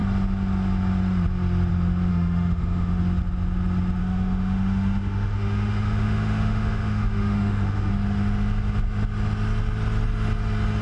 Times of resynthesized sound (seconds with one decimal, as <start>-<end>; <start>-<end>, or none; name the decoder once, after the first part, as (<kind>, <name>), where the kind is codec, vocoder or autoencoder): 2.1-3.0 (autoencoder, DAC-VAE); 4.0-7.9

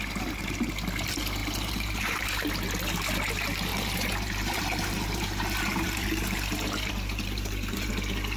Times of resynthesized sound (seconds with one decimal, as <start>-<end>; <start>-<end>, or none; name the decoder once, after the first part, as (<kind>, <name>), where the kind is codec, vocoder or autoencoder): 1.4-2.2 (vocoder, BigVGAN v2); 3.7-7.9

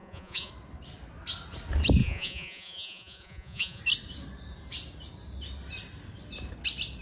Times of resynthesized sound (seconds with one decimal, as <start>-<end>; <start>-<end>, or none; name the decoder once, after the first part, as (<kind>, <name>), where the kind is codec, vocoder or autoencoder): 0.0-0.5 (vocoder, Vocos); 2.0-3.8

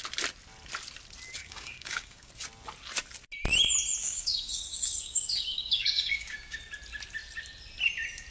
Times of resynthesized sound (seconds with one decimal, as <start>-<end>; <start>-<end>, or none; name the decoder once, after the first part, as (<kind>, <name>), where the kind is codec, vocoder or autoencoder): 1.4-2.3 (codec, DAC); 4.0-6.6